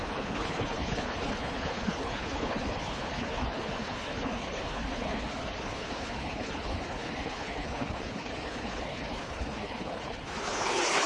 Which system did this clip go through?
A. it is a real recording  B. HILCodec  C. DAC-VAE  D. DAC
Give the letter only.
B